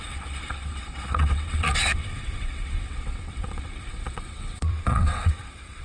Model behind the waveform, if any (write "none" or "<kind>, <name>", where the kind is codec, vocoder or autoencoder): vocoder, WaveNeXt